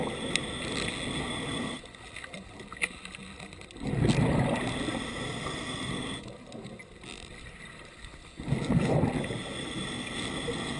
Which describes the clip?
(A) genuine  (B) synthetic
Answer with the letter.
A